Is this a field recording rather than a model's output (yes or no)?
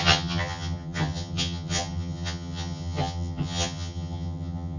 no